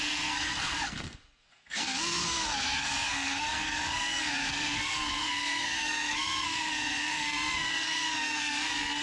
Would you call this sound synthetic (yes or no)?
yes